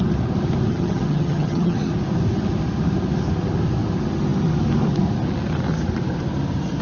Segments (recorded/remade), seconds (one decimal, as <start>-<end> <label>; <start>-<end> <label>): 0.0-0.7 recorded; 0.7-1.9 remade; 1.9-6.8 recorded